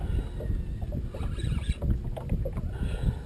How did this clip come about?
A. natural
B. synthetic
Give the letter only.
A